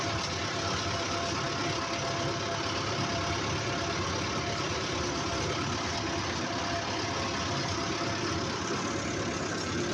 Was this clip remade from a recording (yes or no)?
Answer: no